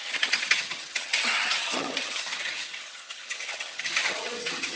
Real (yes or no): no